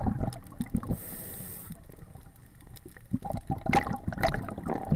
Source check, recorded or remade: recorded